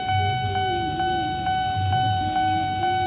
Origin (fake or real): real